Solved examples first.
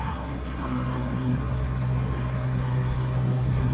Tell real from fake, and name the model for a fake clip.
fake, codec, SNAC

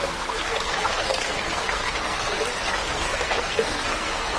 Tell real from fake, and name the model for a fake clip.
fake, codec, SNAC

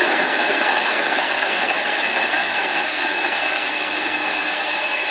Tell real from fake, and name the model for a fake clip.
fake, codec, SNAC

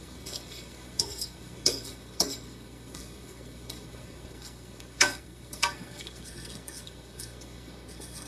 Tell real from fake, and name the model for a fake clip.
fake, codec, SNAC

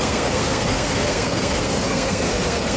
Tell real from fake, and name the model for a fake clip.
fake, codec, SNAC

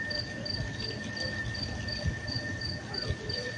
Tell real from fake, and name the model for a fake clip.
real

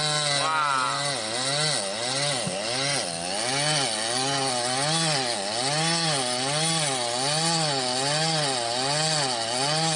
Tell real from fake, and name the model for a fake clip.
real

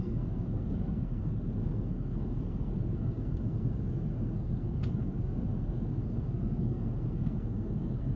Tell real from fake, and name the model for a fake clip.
fake, codec, SNAC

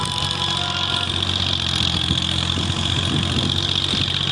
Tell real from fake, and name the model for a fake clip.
real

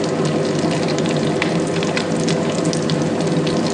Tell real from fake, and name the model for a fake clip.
real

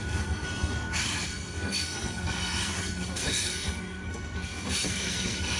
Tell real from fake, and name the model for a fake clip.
fake, codec, SNAC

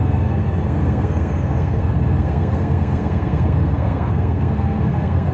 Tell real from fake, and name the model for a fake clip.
fake, codec, SNAC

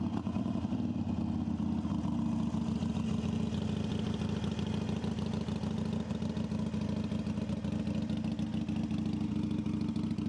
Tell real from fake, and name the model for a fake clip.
real